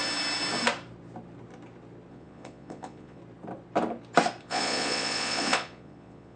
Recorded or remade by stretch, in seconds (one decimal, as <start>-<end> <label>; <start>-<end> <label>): 0.0-2.1 recorded; 2.1-3.2 remade; 3.2-4.4 recorded; 4.4-6.4 remade